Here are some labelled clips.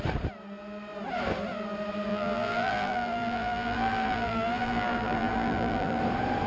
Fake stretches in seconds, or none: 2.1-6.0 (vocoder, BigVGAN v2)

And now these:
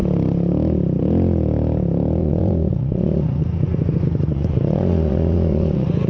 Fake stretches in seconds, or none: 2.2-6.1 (vocoder, Vocos)

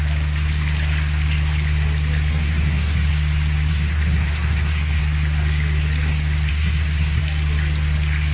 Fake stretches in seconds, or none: 2.3-3.1 (codec, SNAC); 3.7-5.0; 6.5-7.2

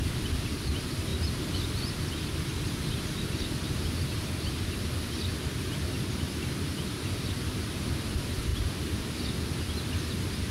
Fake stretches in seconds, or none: none

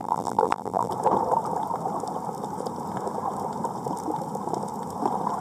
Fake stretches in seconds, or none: 0.0-0.9 (vocoder, BigVGAN v2)

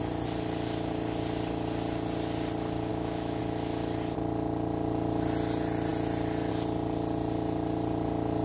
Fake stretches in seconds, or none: 2.9-3.4 (autoencoder, DAC-VAE)

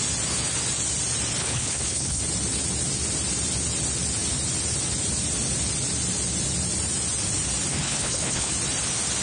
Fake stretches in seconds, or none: 1.4-2.2 (codec, HILCodec); 7.7-8.5

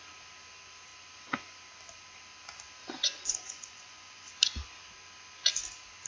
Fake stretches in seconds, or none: 2.8-4.3 (vocoder, Vocos)